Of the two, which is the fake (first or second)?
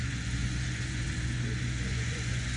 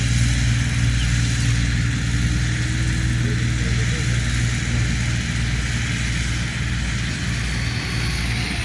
first